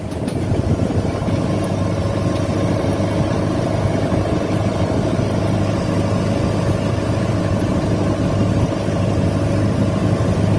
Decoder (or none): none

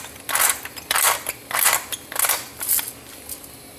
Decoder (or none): none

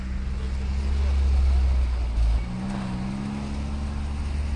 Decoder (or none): none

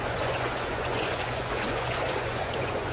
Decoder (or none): vocoder, Vocos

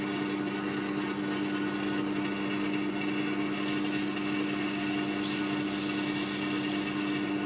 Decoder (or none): none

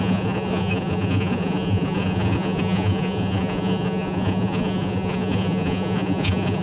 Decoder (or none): vocoder, Vocos